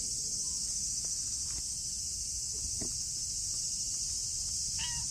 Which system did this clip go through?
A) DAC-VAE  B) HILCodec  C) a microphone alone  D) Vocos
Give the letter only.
C